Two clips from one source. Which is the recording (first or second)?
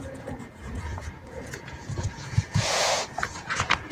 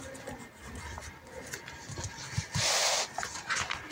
second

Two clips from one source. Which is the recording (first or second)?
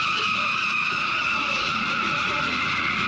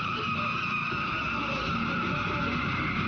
second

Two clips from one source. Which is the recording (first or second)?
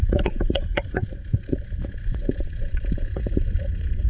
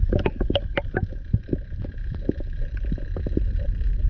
second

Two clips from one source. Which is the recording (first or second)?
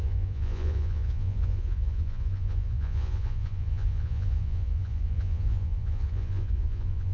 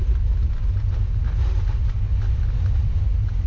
second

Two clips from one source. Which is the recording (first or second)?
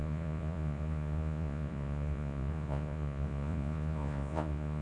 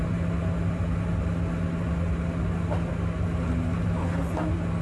second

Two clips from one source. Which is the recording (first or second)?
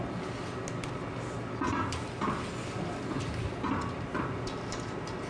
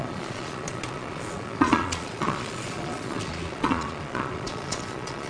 first